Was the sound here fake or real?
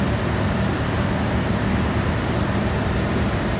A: fake